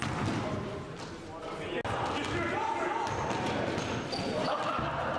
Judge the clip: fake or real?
real